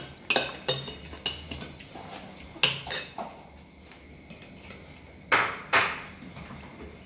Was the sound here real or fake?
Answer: real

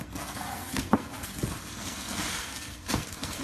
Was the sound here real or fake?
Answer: fake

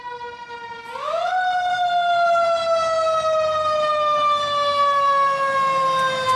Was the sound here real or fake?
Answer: real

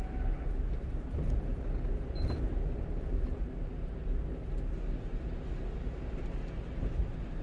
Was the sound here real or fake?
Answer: real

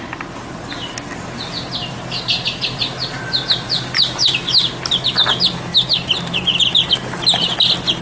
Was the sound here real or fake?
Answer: real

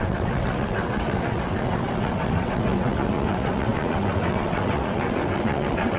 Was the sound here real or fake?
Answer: fake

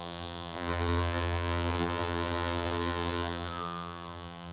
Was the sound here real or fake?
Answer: fake